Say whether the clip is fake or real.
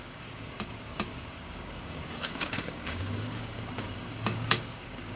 fake